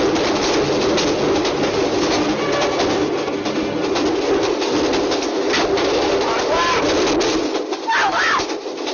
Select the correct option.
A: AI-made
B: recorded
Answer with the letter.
B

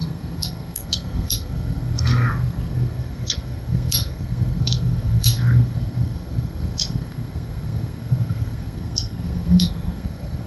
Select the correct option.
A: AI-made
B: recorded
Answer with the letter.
A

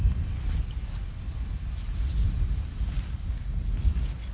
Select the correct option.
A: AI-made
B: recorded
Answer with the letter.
B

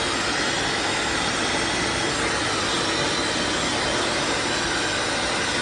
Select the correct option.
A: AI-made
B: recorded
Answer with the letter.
B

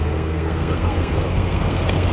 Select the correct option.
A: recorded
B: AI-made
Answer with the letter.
B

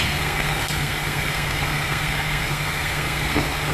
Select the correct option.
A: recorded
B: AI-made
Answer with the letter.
B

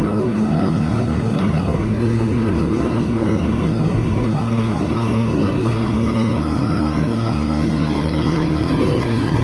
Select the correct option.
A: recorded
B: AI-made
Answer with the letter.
B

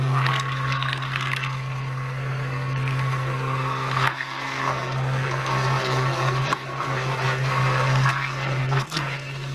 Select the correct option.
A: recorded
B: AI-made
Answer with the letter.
B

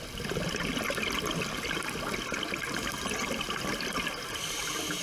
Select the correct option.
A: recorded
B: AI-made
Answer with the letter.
A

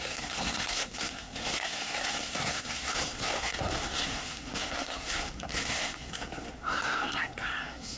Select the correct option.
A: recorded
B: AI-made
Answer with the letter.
B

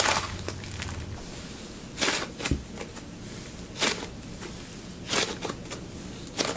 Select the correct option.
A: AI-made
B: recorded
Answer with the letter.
B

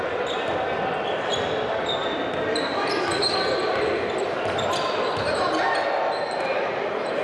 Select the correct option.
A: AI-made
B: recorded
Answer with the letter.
B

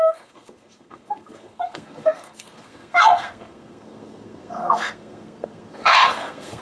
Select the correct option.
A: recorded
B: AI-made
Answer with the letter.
B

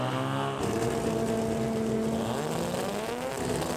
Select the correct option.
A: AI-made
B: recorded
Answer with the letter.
B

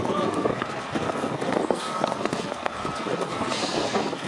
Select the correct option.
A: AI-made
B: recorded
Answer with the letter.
A